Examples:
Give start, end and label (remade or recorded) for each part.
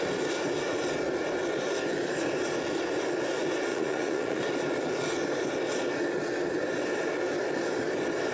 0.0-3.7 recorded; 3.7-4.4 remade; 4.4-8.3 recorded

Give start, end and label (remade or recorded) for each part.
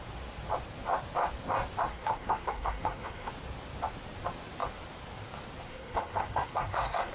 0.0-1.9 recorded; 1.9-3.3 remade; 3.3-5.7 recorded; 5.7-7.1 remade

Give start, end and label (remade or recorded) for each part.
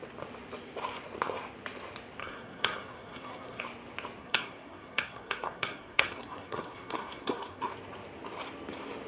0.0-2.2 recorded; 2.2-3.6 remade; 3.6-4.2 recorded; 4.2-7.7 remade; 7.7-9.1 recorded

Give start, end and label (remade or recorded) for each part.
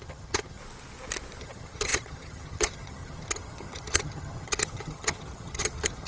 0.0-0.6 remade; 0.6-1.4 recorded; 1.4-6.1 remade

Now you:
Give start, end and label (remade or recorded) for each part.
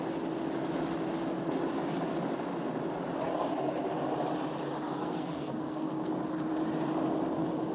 0.0-5.0 recorded; 5.0-6.1 remade; 6.1-7.7 recorded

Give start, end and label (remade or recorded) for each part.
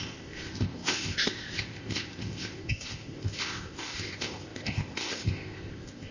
0.0-6.1 remade